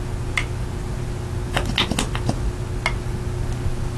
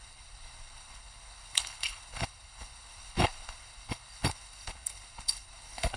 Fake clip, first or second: second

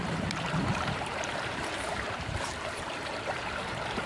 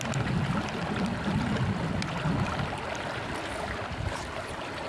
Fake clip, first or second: first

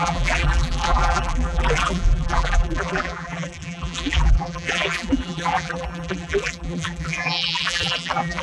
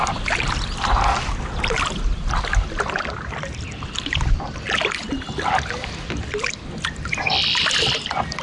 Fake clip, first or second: first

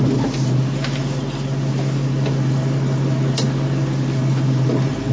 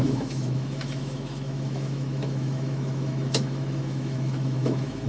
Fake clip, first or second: second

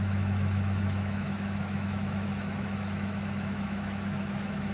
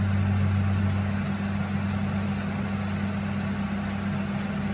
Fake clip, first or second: first